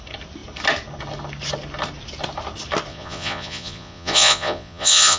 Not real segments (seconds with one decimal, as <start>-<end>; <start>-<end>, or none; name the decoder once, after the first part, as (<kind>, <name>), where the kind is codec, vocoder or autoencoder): 2.9-5.2 (vocoder, Vocos)